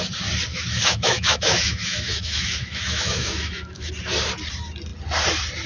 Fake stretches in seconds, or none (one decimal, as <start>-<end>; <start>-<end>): 0.5-3.9